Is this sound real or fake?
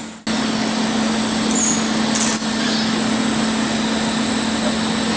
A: real